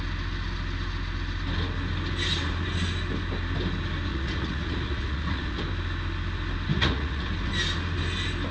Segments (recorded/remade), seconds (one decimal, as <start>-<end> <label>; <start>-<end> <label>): 0.0-4.1 recorded; 4.1-5.6 remade; 5.6-6.7 recorded; 6.7-7.5 remade; 7.5-8.5 recorded